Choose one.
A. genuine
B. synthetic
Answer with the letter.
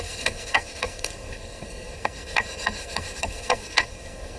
B